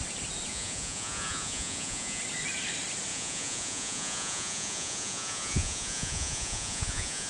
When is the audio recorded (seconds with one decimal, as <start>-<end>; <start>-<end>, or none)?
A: 0.0-0.5; 2.2-3.1